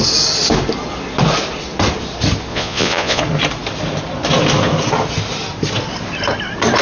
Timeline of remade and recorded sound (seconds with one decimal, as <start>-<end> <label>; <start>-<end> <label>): 0.0-2.5 recorded; 2.5-3.2 remade; 3.2-6.8 recorded